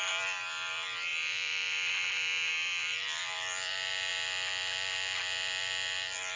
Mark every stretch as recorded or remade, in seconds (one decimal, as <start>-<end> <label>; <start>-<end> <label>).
0.0-6.4 remade